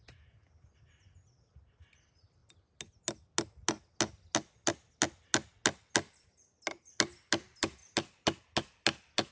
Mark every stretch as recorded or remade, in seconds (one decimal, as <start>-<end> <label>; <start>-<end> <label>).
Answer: 0.0-9.3 recorded